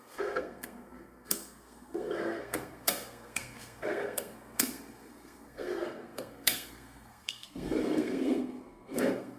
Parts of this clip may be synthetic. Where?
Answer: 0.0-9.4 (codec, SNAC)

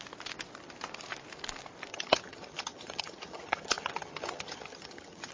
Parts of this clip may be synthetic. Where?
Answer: 1.9-5.3 (vocoder, HiFi-GAN)

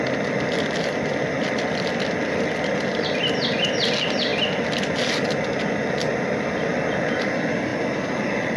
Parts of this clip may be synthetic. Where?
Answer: none

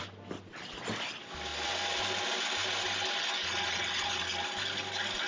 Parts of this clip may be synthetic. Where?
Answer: none